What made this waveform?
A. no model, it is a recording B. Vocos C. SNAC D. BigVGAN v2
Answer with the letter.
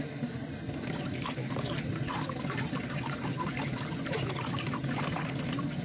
A